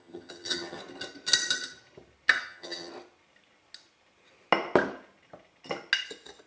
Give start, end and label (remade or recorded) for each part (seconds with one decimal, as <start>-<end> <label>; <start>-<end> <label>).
0.0-0.8 remade; 0.8-2.4 recorded; 2.4-2.9 remade; 2.9-6.5 recorded